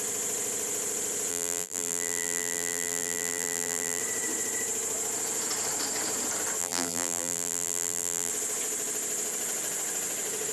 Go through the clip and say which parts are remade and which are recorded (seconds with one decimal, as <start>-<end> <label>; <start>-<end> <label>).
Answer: 0.0-1.3 recorded; 1.3-4.0 remade; 4.0-6.6 recorded; 6.6-8.3 remade; 8.3-10.5 recorded